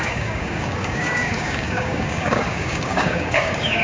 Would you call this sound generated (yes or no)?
yes